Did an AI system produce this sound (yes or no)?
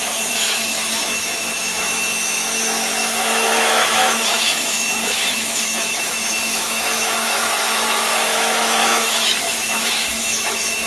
yes